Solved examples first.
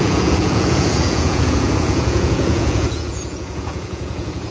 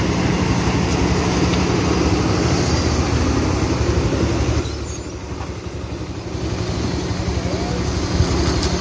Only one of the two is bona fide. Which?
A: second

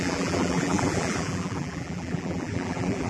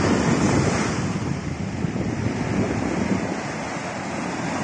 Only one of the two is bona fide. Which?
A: second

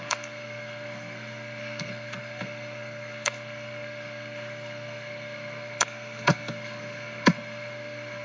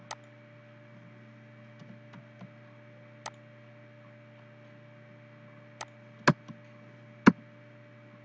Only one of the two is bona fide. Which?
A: second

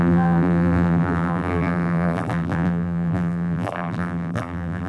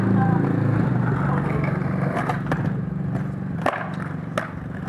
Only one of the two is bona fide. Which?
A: second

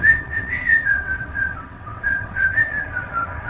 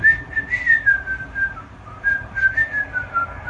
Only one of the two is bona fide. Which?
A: second